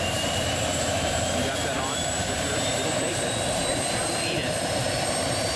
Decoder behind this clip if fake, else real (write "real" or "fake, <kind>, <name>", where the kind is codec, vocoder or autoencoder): fake, vocoder, BigVGAN v2